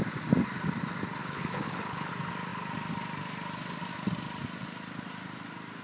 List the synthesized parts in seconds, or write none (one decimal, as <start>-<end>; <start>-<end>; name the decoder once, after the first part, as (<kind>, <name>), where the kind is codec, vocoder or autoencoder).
1.2-2.1 (codec, HILCodec)

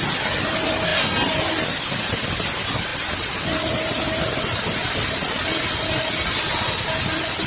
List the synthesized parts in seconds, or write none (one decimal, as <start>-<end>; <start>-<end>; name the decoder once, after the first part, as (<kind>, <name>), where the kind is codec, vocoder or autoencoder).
none

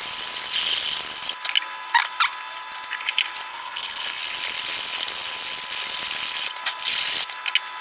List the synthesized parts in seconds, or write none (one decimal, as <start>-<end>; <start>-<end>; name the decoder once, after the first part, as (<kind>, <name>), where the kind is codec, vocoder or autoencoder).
3.5-4.2 (codec, HILCodec)

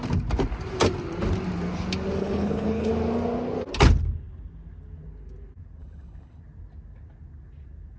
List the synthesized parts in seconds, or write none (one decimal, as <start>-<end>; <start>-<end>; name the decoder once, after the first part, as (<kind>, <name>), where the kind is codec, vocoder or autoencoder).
2.2-2.9 (codec, HILCodec); 5.8-6.4

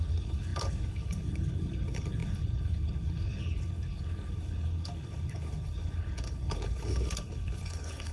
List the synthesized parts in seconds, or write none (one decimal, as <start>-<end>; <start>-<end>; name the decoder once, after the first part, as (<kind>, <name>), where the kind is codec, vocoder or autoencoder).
0.0-8.1 (codec, HILCodec)

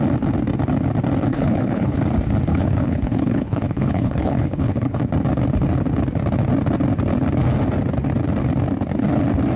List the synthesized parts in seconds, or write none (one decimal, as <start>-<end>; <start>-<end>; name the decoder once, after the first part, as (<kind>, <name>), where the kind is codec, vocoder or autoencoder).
1.3-2.0 (codec, HILCodec); 2.5-5.1

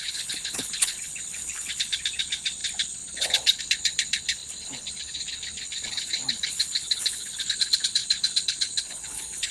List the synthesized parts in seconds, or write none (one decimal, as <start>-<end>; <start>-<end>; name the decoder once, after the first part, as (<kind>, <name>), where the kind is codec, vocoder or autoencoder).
0.0-9.5 (codec, HILCodec)